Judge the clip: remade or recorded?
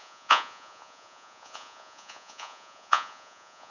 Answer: remade